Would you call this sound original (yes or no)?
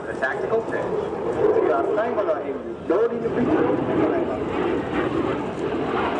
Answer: yes